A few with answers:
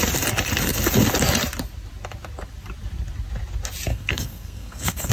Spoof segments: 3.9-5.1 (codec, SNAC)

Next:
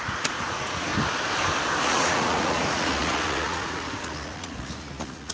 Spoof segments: 0.0-0.9 (vocoder, Vocos); 1.8-5.3

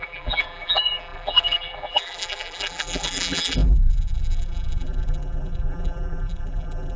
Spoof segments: 0.0-7.0 (vocoder, BigVGAN v2)

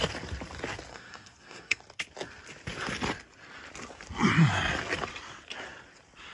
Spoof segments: 0.9-1.8 (codec, SNAC)

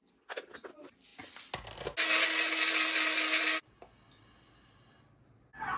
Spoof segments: none

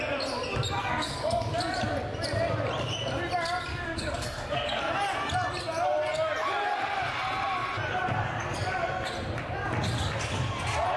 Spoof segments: 0.8-1.5 (codec, SNAC); 3.7-4.9

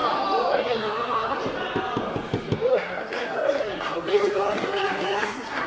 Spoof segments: 0.5-1.4 (codec, SNAC); 2.7-5.7

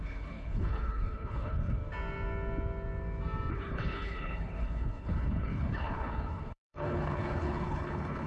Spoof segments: 0.0-1.8 (codec, HILCodec); 3.5-8.3